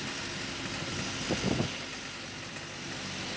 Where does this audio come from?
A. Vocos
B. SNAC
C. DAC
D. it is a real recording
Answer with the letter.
D